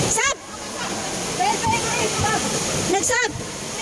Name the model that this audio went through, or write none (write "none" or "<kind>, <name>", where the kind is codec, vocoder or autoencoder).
none